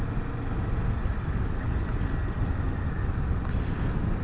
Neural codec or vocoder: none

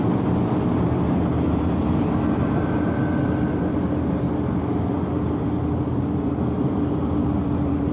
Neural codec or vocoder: vocoder, BigVGAN v2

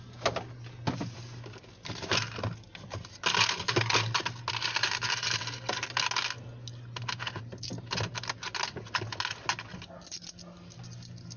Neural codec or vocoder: none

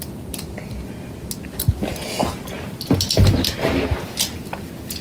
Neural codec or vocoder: none